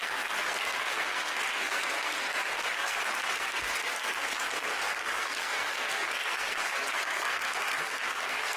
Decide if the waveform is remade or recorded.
remade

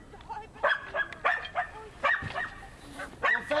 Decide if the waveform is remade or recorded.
recorded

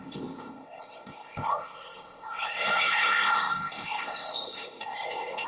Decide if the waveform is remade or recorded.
remade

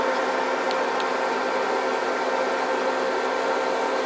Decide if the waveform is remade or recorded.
recorded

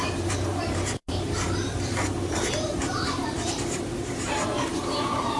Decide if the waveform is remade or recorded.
remade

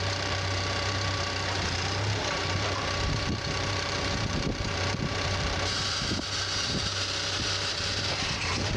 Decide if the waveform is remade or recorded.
remade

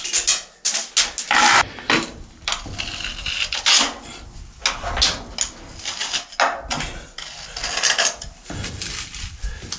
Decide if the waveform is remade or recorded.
recorded